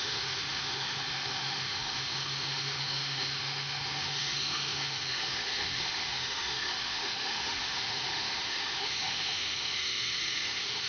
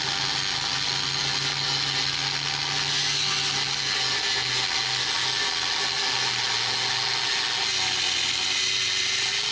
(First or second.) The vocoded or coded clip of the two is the first